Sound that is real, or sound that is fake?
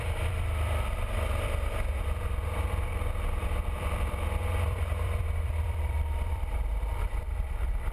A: fake